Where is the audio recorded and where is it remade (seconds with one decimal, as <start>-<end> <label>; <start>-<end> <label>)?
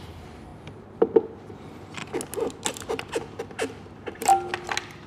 0.0-0.5 remade; 0.5-1.5 recorded; 1.5-2.0 remade; 2.0-2.7 recorded; 2.7-4.3 remade; 4.3-5.1 recorded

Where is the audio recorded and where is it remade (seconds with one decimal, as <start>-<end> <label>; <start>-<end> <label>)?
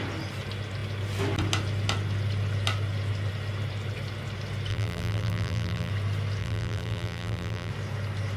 0.0-4.7 recorded; 4.7-5.9 remade; 5.9-6.4 recorded; 6.4-7.7 remade; 7.7-8.4 recorded